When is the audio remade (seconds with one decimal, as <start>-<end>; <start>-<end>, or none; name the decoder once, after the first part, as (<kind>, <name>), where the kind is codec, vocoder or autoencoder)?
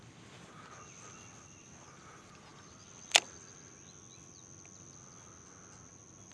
none